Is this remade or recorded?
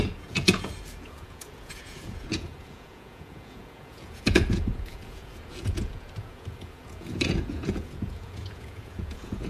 remade